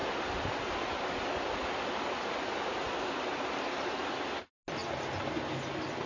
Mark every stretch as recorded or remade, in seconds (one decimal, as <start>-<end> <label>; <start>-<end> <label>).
0.0-3.7 remade; 3.7-6.1 recorded